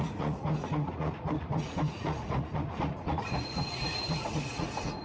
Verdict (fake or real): fake